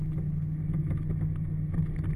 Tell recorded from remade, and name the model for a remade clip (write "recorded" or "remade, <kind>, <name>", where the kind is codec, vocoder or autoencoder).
recorded